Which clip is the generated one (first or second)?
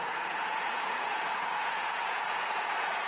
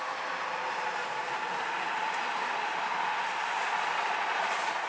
first